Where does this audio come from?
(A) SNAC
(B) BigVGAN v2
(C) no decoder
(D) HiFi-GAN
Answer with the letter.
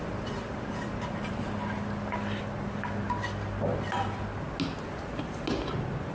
C